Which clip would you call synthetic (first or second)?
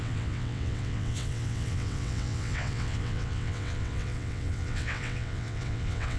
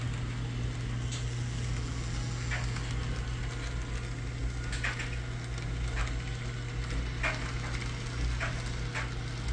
first